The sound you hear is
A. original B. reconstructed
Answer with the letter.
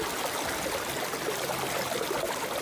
A